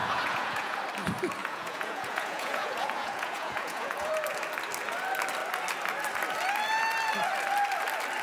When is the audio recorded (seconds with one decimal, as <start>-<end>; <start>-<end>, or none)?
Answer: 0.8-1.4; 4.1-8.2